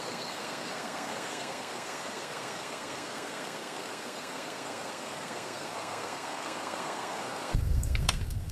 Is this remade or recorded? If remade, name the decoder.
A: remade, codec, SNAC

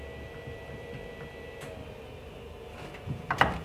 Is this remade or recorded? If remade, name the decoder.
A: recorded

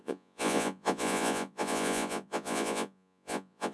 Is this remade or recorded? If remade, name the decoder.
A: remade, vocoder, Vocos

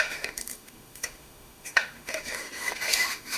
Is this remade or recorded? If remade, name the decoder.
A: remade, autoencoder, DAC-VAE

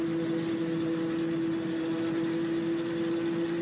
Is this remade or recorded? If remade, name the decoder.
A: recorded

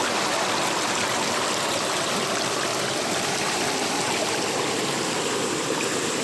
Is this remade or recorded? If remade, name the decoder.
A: recorded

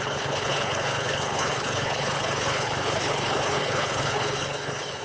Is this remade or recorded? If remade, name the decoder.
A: remade, codec, HILCodec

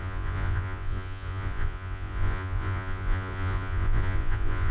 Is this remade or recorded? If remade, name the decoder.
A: remade, vocoder, Vocos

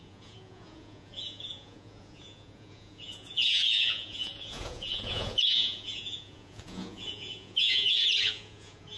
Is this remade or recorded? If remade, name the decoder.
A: remade, vocoder, Vocos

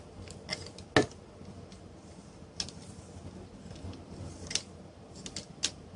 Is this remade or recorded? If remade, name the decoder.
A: recorded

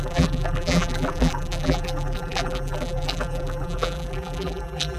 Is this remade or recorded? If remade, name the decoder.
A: remade, vocoder, BigVGAN v2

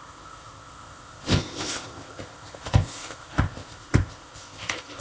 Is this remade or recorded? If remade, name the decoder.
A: remade, codec, ZipCodec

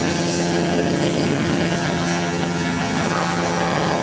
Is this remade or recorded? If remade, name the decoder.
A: remade, vocoder, HiFi-GAN